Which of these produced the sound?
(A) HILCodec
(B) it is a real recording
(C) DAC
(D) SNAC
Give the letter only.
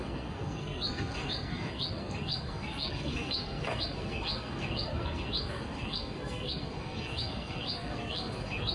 D